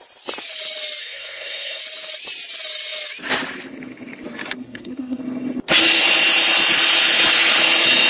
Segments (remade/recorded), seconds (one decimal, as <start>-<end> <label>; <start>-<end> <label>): 0.0-1.0 recorded; 1.0-1.8 remade; 1.8-4.6 recorded; 4.6-5.2 remade; 5.2-8.1 recorded